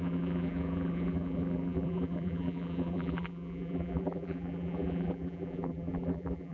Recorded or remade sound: remade